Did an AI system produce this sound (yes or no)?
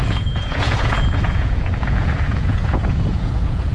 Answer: yes